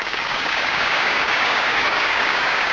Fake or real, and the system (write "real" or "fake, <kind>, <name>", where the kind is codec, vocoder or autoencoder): fake, codec, DAC